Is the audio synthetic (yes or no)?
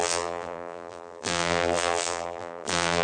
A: yes